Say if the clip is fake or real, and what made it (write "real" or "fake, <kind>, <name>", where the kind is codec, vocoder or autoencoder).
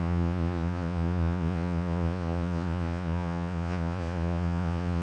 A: fake, vocoder, Vocos